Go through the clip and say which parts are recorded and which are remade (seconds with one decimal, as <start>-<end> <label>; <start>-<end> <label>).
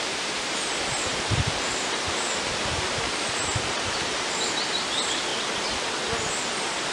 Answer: 0.0-5.3 remade; 5.3-6.3 recorded; 6.3-6.9 remade